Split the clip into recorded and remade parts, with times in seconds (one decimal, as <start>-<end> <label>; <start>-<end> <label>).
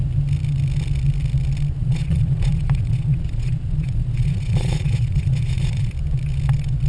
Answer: 0.0-1.8 recorded; 1.8-5.9 remade; 5.9-6.9 recorded